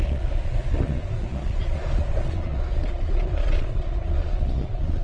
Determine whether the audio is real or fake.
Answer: fake